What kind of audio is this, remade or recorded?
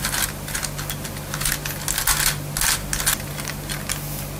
recorded